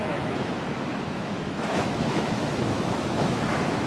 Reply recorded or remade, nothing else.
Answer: remade